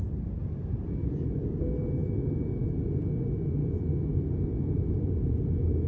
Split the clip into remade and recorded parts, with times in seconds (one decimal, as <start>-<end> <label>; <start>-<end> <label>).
0.0-1.0 recorded; 1.0-1.6 remade; 1.6-2.0 recorded; 2.0-3.0 remade; 3.0-5.9 recorded